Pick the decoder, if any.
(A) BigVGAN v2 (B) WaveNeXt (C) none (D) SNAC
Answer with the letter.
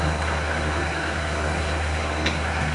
D